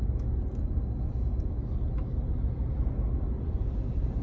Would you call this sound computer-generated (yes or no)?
no